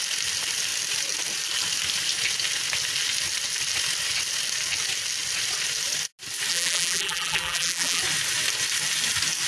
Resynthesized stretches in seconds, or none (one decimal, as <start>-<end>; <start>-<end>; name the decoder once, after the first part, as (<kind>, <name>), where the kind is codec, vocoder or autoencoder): 6.5-8.0 (vocoder, BigVGAN v2)